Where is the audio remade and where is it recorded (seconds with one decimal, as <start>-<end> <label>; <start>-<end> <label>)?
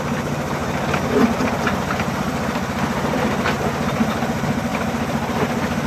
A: 0.0-0.6 recorded; 0.6-2.1 remade; 2.1-4.7 recorded; 4.7-5.9 remade